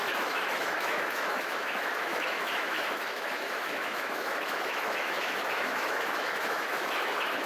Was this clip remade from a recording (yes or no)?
yes